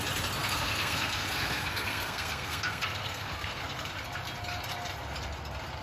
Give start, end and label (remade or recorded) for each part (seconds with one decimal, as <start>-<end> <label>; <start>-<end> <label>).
0.0-0.4 recorded; 0.4-3.9 remade; 3.9-5.8 recorded